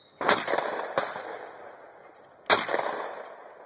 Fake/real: real